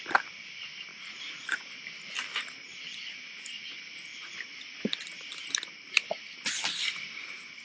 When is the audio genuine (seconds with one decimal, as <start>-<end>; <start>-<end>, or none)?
0.0-0.9; 1.7-7.6